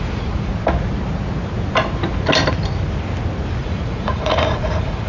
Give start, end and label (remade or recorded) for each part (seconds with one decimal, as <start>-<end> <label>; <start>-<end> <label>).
0.0-0.5 remade; 0.5-3.6 recorded; 3.6-5.1 remade